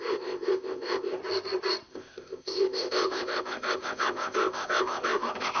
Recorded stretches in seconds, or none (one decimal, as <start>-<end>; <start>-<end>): 1.2-1.9